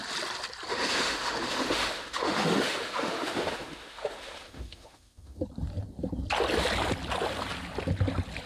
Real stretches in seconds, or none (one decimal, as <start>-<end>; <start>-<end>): 0.0-0.7; 5.4-8.5